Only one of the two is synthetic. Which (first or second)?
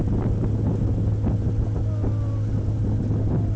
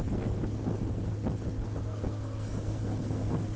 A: second